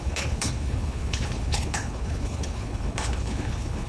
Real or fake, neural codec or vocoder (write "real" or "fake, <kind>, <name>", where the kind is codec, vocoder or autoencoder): fake, codec, HILCodec